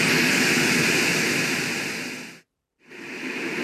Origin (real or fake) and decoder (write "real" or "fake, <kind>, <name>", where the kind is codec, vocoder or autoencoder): real